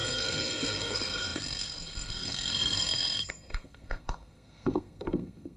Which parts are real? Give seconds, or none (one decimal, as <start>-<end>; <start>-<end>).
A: none